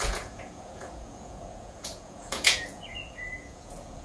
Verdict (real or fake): fake